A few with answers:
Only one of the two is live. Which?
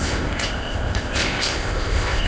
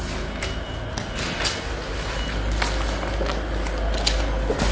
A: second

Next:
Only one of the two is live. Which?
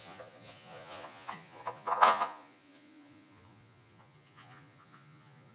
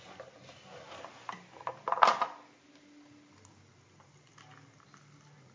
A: second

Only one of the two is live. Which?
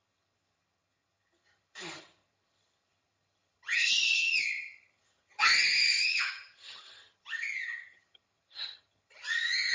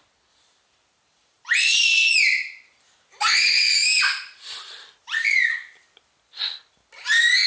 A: second